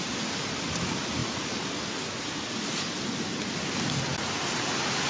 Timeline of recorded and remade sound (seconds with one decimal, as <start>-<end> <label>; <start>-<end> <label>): 0.0-5.1 recorded